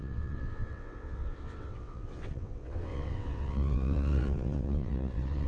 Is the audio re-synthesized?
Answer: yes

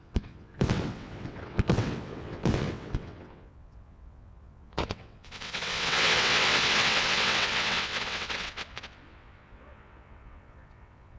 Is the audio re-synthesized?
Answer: yes